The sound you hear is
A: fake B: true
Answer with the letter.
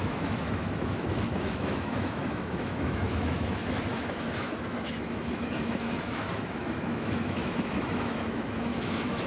A